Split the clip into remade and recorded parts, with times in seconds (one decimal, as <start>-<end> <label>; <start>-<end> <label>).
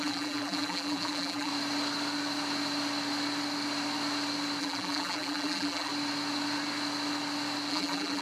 0.0-1.5 remade; 1.5-4.6 recorded; 4.6-5.9 remade; 5.9-7.7 recorded; 7.7-8.2 remade